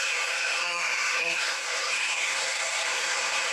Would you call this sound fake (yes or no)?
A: yes